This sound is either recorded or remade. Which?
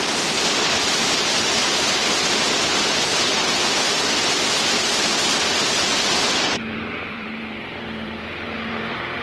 remade